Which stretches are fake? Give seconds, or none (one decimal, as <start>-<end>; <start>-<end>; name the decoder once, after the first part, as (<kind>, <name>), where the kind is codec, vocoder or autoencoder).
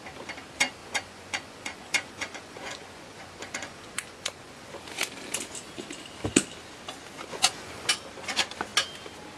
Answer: 0.8-4.7 (vocoder, Vocos); 7.3-7.9